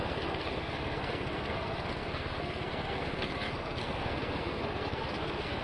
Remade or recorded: remade